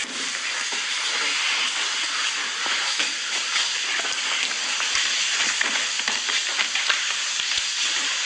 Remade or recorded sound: recorded